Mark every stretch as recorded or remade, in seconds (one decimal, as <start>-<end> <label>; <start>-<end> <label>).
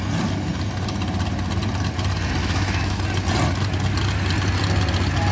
0.0-2.4 recorded; 2.4-3.0 remade; 3.0-5.3 recorded